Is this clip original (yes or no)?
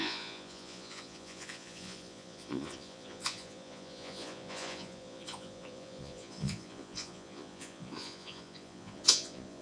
no